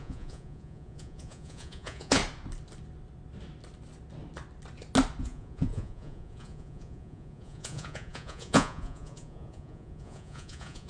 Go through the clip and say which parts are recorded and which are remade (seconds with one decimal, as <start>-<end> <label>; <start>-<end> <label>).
0.0-2.2 remade; 2.2-5.2 recorded; 5.2-10.9 remade